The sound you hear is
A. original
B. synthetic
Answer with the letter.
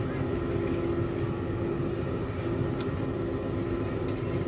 A